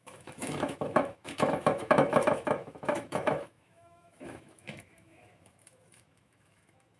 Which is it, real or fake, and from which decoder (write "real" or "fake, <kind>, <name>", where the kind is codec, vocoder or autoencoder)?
fake, autoencoder, DAC-VAE